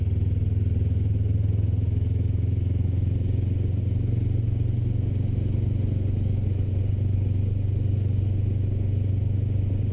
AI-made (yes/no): no